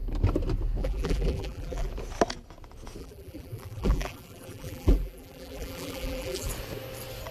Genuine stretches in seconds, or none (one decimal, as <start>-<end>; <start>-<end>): 0.0-0.8; 1.9-3.0; 6.5-7.3